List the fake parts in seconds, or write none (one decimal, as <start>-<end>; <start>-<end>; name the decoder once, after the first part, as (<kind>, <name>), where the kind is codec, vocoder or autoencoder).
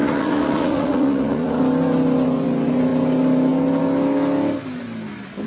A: 0.0-1.6 (vocoder, Vocos)